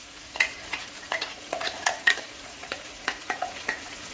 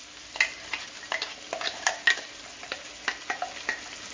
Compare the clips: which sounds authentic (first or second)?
second